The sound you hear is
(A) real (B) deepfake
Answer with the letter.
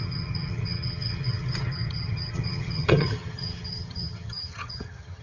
B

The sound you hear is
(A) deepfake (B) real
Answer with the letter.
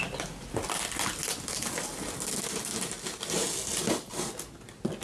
B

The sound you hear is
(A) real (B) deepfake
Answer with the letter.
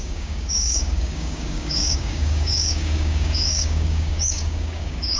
B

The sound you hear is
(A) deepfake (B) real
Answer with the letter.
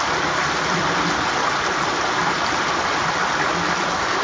B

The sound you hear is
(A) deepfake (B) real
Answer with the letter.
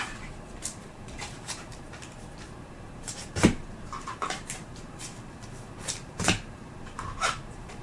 A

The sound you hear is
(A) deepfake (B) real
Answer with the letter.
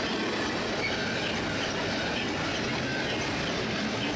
B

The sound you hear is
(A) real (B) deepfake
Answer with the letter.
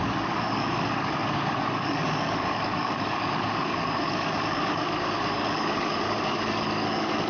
B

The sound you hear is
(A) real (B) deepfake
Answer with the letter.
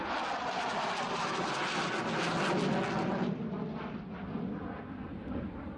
A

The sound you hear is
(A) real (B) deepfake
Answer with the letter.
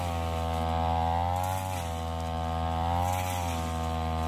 A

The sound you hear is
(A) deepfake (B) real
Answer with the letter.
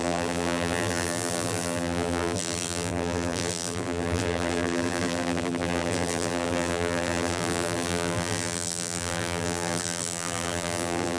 A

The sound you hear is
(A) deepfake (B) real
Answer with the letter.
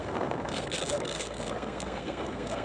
A